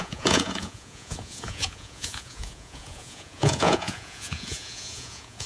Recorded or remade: remade